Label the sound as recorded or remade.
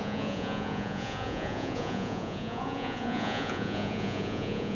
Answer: remade